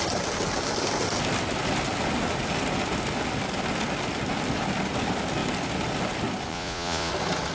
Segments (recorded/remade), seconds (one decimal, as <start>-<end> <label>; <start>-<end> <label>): 0.0-6.5 recorded; 6.5-7.1 remade; 7.1-7.5 recorded